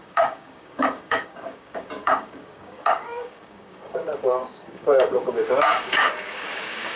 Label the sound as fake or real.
fake